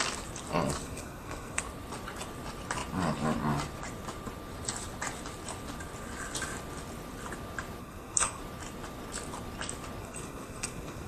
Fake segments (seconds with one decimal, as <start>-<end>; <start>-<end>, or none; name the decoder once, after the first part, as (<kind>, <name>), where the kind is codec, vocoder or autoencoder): 0.8-1.6 (codec, SNAC); 7.8-8.4; 10.0-11.1